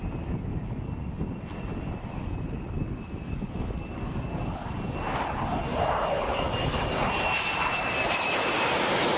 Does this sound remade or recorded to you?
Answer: recorded